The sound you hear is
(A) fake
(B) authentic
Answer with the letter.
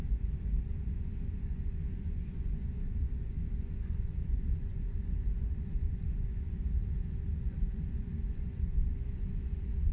A